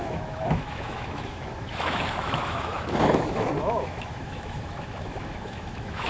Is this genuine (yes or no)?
no